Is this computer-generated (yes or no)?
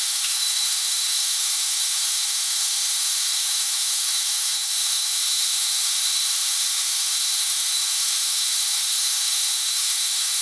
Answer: yes